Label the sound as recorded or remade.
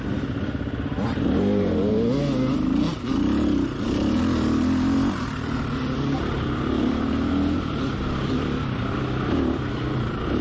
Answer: recorded